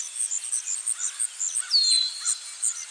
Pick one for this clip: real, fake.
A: real